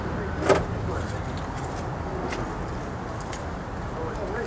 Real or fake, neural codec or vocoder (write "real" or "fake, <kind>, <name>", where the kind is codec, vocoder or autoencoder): real